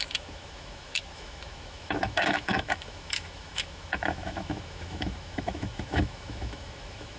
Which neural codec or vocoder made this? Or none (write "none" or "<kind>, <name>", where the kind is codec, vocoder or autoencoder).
autoencoder, DAC-VAE